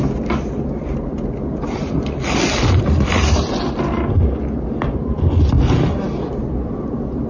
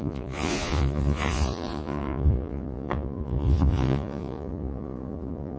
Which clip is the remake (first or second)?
second